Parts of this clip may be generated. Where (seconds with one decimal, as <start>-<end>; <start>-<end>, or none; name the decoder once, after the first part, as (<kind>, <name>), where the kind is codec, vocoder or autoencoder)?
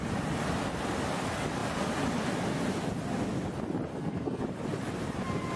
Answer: 3.9-4.4 (codec, SNAC)